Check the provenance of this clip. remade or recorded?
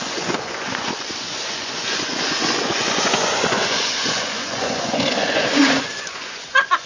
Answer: remade